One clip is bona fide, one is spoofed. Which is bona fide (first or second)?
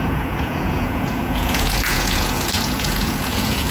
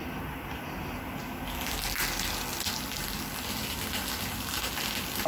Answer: second